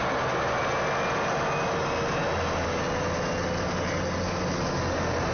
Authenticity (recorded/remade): recorded